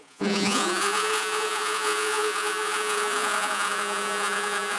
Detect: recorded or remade remade